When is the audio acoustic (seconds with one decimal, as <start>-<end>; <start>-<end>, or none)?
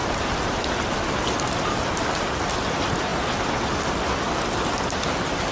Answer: 0.0-2.2; 3.1-4.3